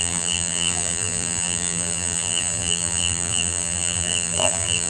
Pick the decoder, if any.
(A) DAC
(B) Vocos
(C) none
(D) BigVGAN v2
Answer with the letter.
D